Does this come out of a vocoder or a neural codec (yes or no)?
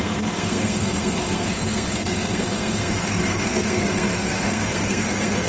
yes